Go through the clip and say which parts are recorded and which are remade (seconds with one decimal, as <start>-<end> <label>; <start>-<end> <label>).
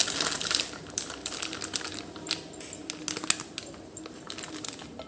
0.0-1.9 remade; 1.9-5.1 recorded